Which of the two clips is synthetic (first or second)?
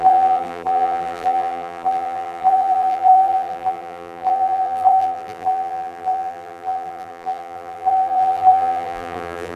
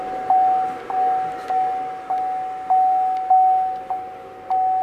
first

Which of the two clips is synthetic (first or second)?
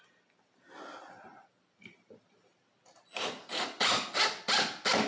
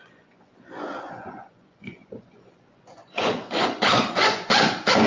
second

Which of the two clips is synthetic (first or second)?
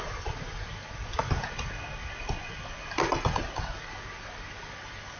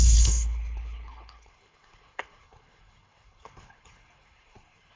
second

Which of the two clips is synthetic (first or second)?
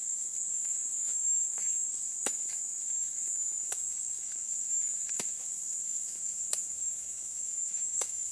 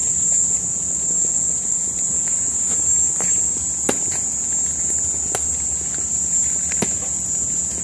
first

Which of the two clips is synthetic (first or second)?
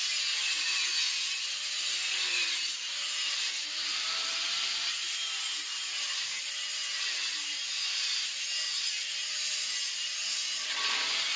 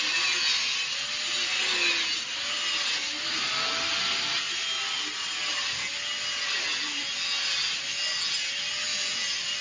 first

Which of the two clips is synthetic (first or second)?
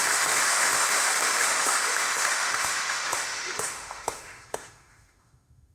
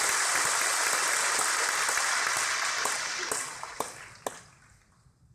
first